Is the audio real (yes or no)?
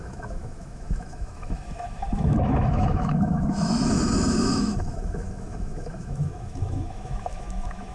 no